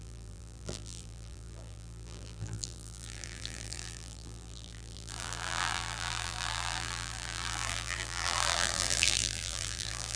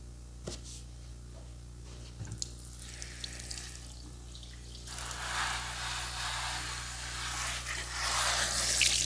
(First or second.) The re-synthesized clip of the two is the first